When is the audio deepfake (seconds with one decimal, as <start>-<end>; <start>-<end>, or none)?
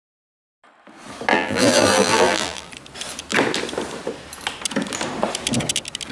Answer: 1.3-2.7